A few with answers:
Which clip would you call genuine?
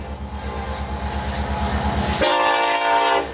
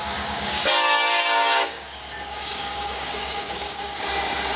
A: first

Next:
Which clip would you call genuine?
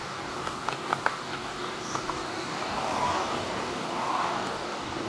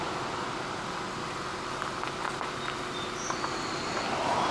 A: second